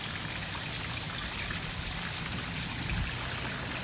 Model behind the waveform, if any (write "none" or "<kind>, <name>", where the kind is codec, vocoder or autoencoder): none